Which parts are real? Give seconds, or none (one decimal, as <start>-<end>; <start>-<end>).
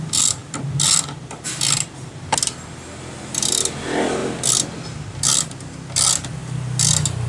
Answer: 0.0-7.3